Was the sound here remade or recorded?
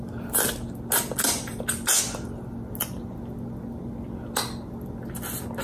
recorded